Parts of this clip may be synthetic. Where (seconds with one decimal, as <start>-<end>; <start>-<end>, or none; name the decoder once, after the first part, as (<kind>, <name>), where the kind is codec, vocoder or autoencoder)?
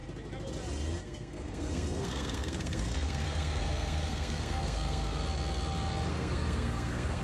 1.0-5.2 (codec, SNAC); 6.1-7.2